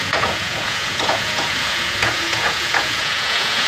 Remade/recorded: remade